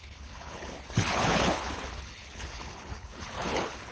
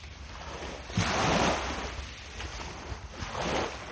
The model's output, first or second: first